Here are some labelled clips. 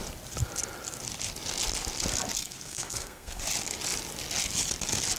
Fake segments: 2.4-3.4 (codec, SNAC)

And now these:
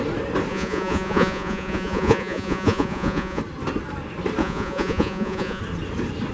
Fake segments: 0.5-3.4 (vocoder, Vocos); 4.4-5.6

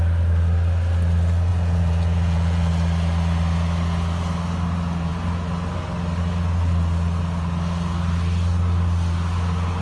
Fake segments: 1.5-2.7 (vocoder, Vocos)

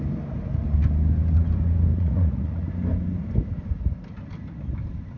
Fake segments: 1.9-2.7 (vocoder, Vocos)

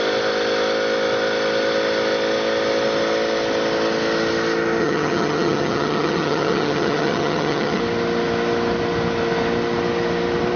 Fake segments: 4.8-7.8 (vocoder, HiFi-GAN)

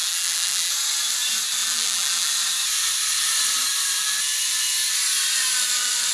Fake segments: 0.0-0.7 (vocoder, BigVGAN v2); 1.6-2.3